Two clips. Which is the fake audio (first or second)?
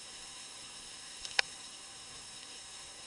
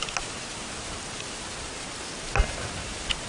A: first